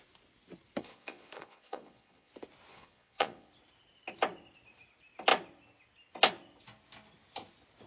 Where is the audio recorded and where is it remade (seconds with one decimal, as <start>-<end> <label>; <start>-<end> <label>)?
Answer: 0.0-0.8 recorded; 0.8-2.3 remade; 2.3-2.7 recorded; 2.7-3.5 remade; 3.5-7.9 recorded